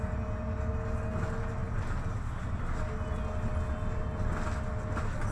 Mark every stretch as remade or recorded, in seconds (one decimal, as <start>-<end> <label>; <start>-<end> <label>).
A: 0.0-5.3 recorded